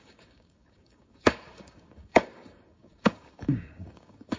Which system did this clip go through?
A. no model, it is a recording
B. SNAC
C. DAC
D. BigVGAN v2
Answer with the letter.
C